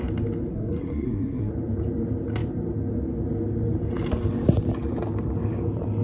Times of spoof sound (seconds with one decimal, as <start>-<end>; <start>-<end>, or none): 0.5-1.5